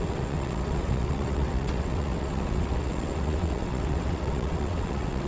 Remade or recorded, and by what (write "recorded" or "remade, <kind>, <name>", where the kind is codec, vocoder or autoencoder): remade, vocoder, WaveNeXt